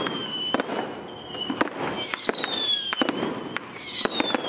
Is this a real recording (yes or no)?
yes